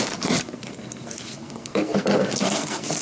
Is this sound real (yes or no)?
no